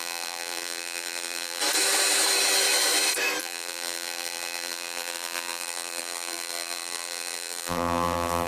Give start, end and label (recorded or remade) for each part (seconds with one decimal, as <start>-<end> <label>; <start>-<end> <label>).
0.0-1.6 remade; 1.6-3.4 recorded; 3.4-8.5 remade